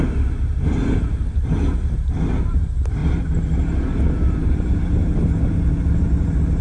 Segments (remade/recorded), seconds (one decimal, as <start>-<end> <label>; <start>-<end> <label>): 0.0-3.0 remade; 3.0-4.3 recorded; 4.3-5.0 remade; 5.0-6.6 recorded